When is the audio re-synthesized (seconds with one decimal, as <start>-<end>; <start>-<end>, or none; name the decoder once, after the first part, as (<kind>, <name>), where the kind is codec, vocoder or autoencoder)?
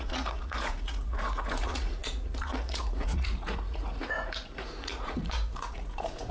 0.0-6.3 (vocoder, Vocos)